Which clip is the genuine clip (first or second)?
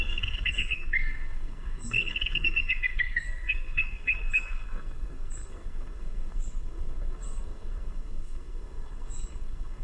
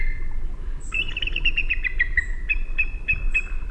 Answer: second